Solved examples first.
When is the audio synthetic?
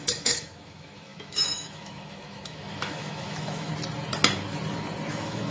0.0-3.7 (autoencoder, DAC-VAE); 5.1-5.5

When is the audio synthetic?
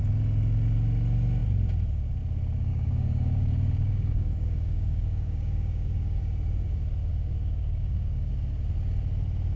2.7-6.2 (codec, DAC); 7.1-8.3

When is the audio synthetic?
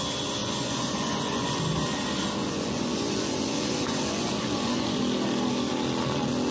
0.4-1.6 (vocoder, Vocos); 2.4-5.0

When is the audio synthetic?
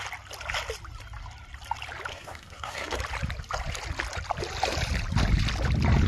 2.1-3.0 (codec, SNAC)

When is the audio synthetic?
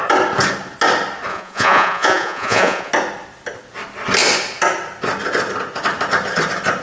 1.3-2.9 (vocoder, Vocos)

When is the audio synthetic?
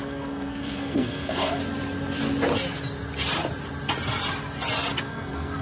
0.0-1.6 (codec, SNAC); 5.0-5.6